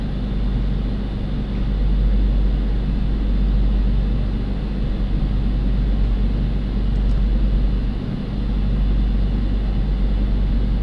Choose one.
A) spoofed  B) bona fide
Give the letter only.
B